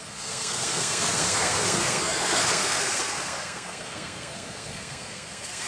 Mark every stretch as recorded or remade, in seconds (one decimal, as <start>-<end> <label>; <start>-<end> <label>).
0.0-5.7 remade